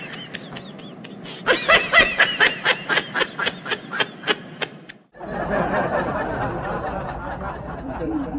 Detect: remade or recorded recorded